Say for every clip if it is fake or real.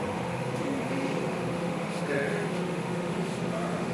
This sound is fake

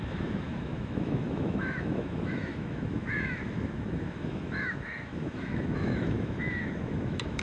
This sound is fake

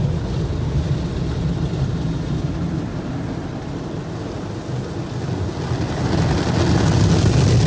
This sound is real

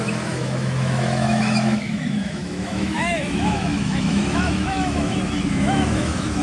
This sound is fake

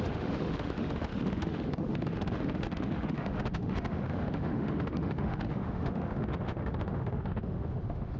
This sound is fake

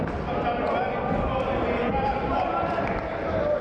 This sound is real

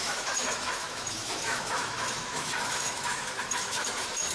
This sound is fake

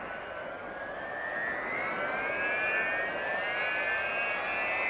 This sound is real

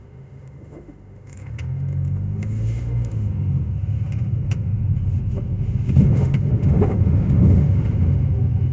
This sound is fake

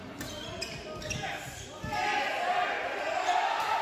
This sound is real